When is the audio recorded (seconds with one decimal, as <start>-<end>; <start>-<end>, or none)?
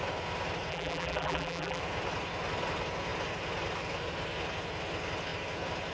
0.0-0.7; 1.8-5.9